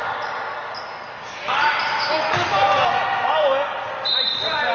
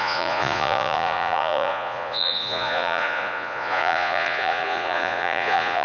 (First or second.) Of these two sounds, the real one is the first